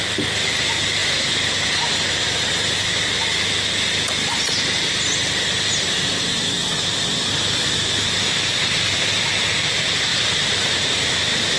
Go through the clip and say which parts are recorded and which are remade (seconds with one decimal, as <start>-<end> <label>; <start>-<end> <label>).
0.0-1.0 recorded; 1.0-2.5 remade; 2.5-10.1 recorded; 10.1-11.6 remade